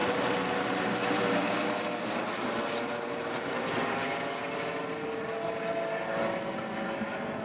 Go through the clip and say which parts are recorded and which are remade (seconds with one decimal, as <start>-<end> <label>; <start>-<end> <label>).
0.0-7.4 recorded